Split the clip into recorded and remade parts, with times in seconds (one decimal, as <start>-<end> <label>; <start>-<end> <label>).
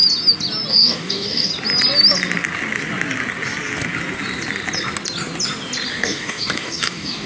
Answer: 0.0-0.7 recorded; 0.7-1.5 remade; 1.5-5.9 recorded; 5.9-7.3 remade